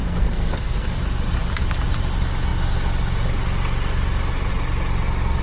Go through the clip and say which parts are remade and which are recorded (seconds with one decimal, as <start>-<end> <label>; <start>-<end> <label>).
0.0-1.0 remade; 1.0-5.4 recorded